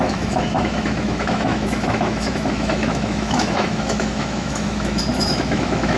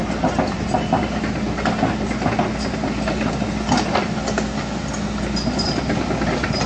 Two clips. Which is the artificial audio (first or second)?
first